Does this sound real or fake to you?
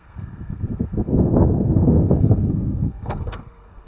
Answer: fake